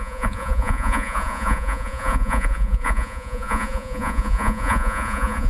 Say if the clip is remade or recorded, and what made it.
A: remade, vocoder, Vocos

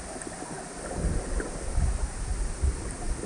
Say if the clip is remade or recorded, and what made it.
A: recorded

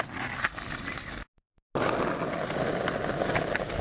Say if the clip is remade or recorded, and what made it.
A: recorded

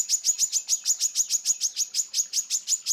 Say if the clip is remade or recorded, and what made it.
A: recorded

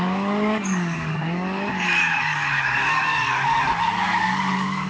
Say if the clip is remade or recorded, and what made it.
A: remade, codec, DAC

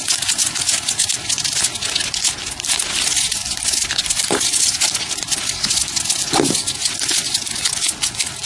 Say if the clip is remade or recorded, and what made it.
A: recorded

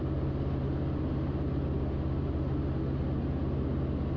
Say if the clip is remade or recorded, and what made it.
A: recorded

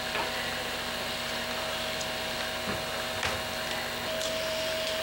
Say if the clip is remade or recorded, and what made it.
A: recorded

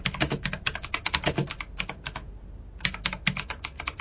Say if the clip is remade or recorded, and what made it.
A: recorded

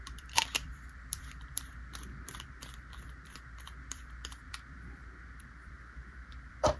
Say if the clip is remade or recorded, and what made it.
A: remade, vocoder, BigVGAN v2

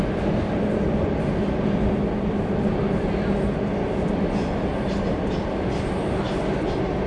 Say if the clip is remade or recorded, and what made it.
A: recorded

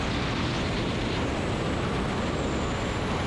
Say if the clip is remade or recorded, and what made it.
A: recorded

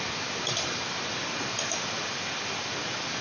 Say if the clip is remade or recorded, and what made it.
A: recorded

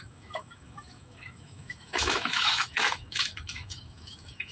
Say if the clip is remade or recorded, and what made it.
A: remade, autoencoder, DAC-VAE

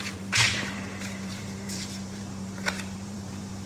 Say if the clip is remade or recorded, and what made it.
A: remade, vocoder, BigVGAN v2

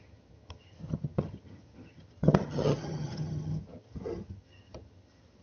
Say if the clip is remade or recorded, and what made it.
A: remade, vocoder, HiFi-GAN